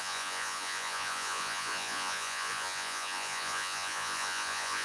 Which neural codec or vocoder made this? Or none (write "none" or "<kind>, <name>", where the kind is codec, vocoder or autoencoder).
vocoder, Vocos